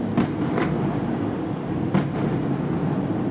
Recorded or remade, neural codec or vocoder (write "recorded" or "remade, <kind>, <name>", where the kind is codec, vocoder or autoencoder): recorded